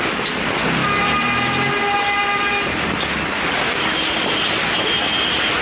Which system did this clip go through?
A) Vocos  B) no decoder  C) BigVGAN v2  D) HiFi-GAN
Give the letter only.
B